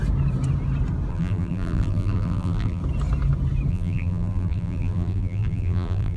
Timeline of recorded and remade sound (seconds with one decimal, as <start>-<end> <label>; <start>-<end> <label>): 0.0-1.1 recorded; 1.1-2.8 remade; 2.8-3.7 recorded; 3.7-6.2 remade